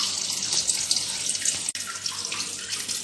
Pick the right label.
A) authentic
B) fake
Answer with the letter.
A